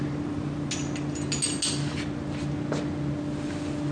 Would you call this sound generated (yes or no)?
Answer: no